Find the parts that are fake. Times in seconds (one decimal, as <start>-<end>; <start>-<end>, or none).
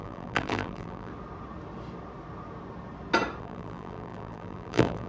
0.0-1.1; 3.4-5.1